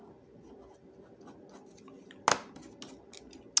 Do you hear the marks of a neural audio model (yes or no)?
no